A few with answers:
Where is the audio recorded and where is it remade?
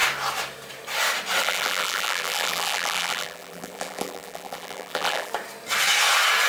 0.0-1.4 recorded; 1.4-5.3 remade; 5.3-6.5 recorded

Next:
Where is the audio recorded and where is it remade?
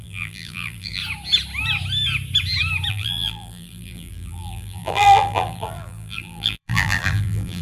0.0-1.0 remade; 1.0-2.9 recorded; 2.9-7.6 remade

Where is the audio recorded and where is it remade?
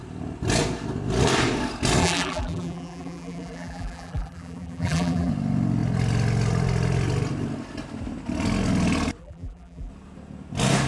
0.0-2.0 recorded; 2.0-5.3 remade; 5.3-9.2 recorded; 9.2-9.9 remade; 9.9-10.9 recorded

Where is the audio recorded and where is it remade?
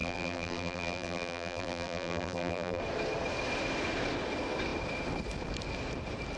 0.0-2.8 remade; 2.8-6.4 recorded